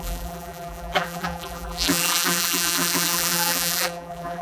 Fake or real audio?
fake